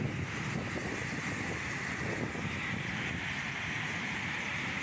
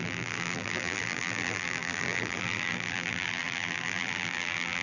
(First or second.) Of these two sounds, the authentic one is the first